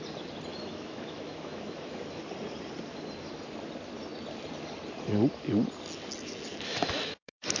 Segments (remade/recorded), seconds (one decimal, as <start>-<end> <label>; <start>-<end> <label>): 0.0-0.5 recorded; 0.5-2.2 remade; 2.2-6.5 recorded; 6.5-7.6 remade